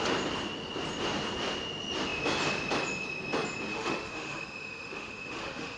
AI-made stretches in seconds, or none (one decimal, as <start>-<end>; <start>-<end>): 3.7-5.8

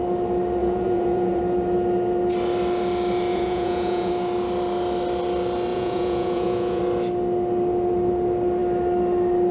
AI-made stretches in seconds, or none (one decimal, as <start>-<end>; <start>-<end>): 0.6-1.4; 3.3-4.1; 5.7-6.8

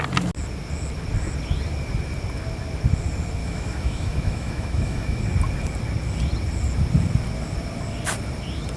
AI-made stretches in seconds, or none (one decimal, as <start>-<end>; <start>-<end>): 3.4-5.2

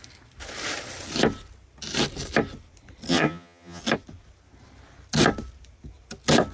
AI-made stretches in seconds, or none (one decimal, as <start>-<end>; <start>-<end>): 3.1-3.8